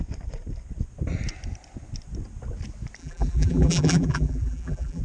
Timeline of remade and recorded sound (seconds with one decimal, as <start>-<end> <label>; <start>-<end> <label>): 0.0-3.0 recorded; 3.0-5.0 remade